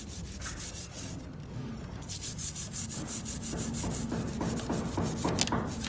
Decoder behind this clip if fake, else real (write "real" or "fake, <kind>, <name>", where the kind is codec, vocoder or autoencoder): real